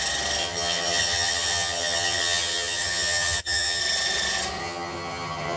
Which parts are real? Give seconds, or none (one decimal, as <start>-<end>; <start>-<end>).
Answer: 0.0-0.4; 3.8-4.6